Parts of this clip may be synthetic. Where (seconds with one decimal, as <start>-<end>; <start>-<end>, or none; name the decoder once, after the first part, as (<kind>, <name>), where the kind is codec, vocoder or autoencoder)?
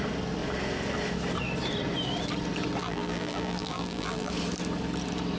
2.8-4.3 (vocoder, BigVGAN v2)